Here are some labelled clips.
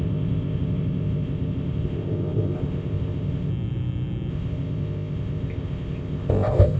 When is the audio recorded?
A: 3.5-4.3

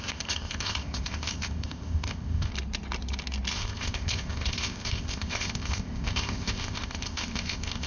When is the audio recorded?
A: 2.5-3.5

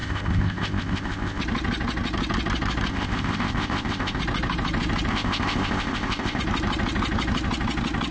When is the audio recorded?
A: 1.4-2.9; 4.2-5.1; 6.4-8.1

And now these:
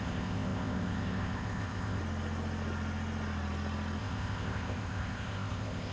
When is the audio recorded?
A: 2.0-4.0

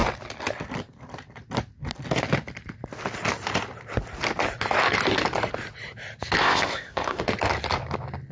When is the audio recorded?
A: 0.0-6.4; 7.2-8.3

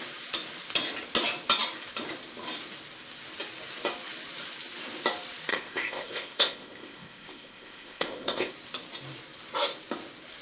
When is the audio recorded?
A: 0.0-5.5; 8.5-10.4

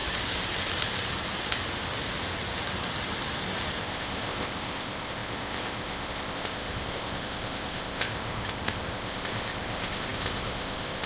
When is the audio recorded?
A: 0.0-3.8